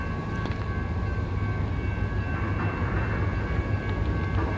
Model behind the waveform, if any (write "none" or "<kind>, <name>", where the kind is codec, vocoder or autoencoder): none